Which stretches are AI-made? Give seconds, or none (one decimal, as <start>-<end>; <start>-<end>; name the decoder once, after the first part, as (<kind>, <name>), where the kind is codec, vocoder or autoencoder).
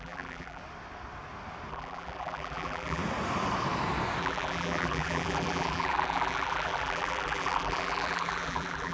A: 0.0-0.6 (vocoder, BigVGAN v2); 1.7-3.0; 4.2-8.9